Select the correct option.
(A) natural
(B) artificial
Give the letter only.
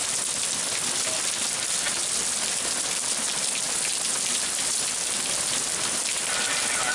B